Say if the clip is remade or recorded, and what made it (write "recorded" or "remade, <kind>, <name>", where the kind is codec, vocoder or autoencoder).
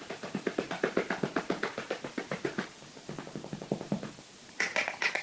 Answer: recorded